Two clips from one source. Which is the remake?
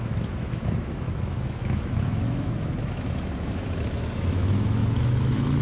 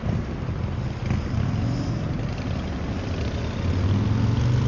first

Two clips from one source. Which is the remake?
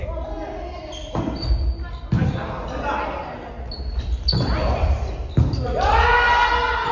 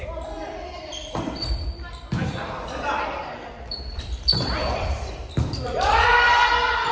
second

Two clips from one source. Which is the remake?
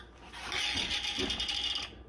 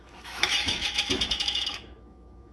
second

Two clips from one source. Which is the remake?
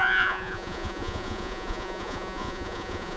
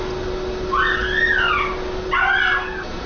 first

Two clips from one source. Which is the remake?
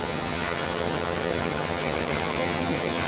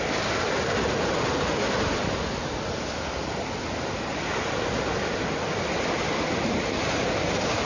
first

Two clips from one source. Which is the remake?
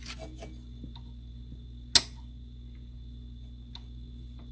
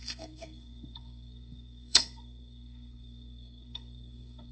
second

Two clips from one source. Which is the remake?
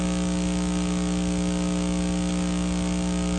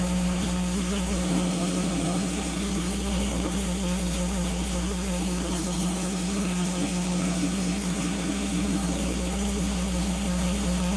second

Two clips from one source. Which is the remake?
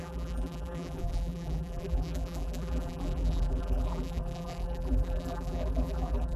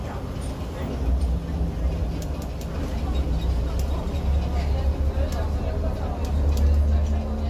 first